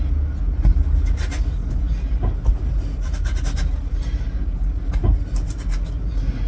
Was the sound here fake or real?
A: real